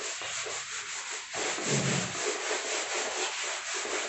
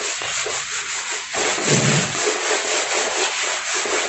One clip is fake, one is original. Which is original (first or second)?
first